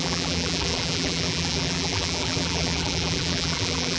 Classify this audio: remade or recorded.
remade